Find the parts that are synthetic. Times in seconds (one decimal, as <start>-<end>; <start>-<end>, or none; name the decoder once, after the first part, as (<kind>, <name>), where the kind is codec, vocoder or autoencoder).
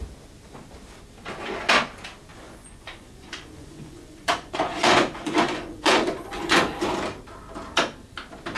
2.3-6.8 (vocoder, Vocos)